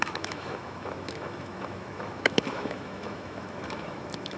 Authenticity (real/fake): fake